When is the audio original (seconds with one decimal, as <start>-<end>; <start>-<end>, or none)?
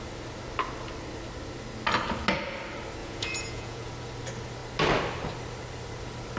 0.0-3.0; 3.9-6.4